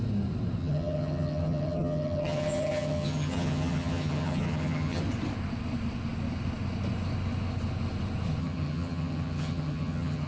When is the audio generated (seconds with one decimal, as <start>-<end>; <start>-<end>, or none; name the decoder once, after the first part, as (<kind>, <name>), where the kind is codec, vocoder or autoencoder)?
0.6-5.0 (vocoder, HiFi-GAN); 8.4-10.3